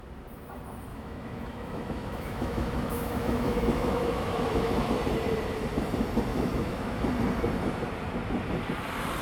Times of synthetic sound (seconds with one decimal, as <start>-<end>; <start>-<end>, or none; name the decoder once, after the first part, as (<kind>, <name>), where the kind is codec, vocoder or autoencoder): 0.9-4.9 (autoencoder, DAC-VAE); 6.3-7.0